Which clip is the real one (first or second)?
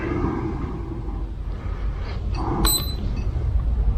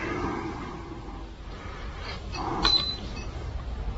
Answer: first